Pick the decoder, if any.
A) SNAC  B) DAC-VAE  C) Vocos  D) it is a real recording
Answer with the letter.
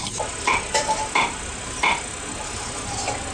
D